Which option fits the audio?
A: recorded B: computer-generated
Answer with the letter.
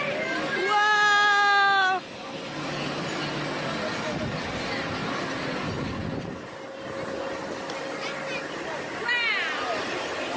A